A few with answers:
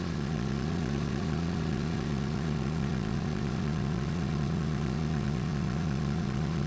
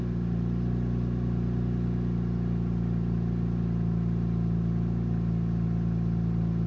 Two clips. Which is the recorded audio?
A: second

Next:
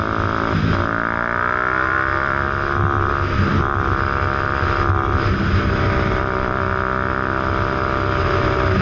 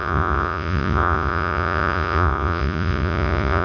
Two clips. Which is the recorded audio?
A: first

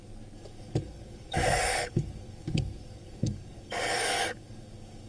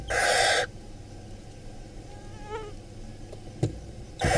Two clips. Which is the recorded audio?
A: second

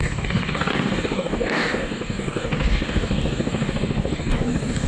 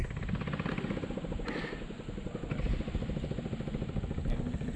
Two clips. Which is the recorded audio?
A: second